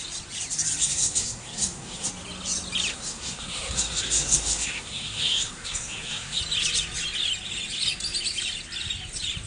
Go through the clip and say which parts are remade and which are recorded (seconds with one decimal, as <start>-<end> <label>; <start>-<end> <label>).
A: 0.0-0.8 recorded; 0.8-2.1 remade; 2.1-2.9 recorded; 2.9-6.4 remade; 6.4-9.5 recorded